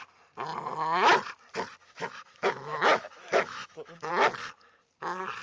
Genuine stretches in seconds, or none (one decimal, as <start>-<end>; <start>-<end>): 0.0-1.8; 4.1-5.4